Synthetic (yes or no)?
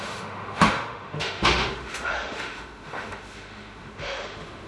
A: yes